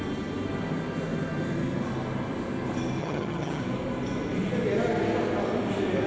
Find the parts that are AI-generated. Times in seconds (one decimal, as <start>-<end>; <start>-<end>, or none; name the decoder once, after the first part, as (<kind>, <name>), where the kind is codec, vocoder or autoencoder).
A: 3.0-3.6 (vocoder, HiFi-GAN)